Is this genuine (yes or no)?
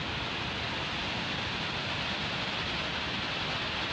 yes